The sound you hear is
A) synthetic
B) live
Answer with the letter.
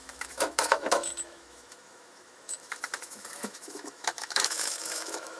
A